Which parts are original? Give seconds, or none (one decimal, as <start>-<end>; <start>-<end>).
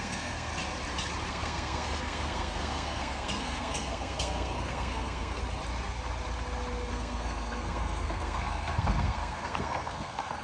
0.5-1.3; 5.4-6.9